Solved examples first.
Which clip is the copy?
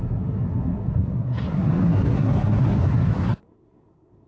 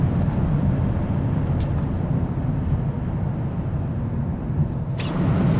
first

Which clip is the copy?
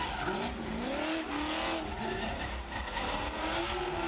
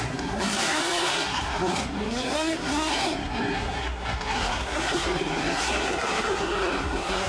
second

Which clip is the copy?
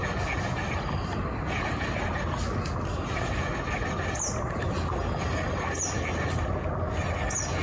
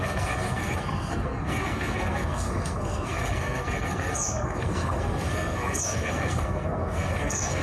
second